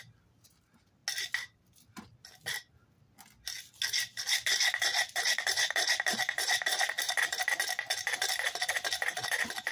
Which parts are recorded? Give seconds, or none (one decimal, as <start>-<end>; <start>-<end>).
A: 0.0-4.9; 7.5-9.7